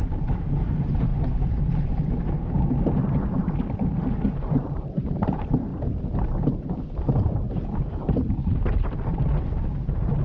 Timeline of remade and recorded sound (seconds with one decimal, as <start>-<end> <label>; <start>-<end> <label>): 0.0-1.1 remade; 1.1-4.2 recorded; 4.2-5.7 remade; 5.7-8.4 recorded; 8.4-10.2 remade